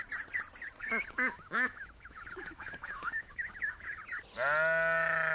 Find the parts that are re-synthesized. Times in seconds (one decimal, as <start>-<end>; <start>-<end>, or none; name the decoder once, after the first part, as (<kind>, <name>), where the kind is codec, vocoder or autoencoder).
0.8-4.0 (autoencoder, DAC-VAE)